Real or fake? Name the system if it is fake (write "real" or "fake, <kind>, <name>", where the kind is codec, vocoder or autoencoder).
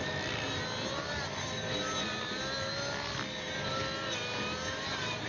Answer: real